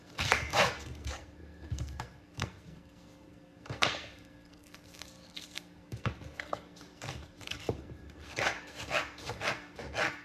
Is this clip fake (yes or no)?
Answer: yes